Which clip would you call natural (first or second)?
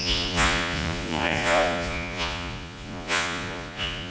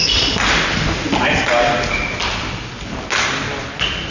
second